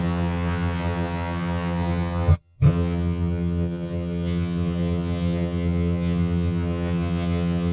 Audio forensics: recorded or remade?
remade